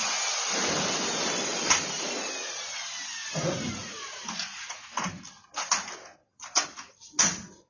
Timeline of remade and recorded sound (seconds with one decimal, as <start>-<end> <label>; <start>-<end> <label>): 0.0-4.5 recorded; 4.5-5.2 remade; 5.2-7.7 recorded